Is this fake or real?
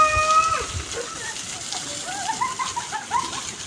real